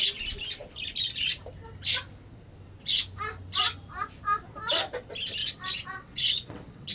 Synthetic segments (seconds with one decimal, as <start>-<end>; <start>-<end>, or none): 5.4-6.9